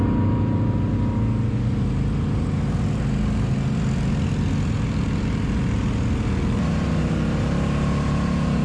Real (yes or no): yes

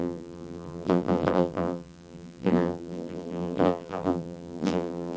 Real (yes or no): no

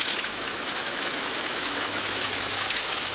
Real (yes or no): no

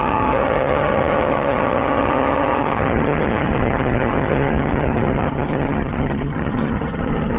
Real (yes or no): no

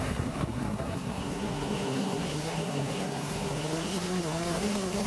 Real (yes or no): no